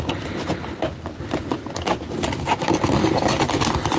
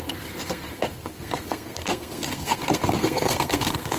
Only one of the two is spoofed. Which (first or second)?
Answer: second